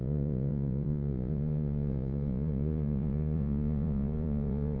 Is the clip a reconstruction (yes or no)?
yes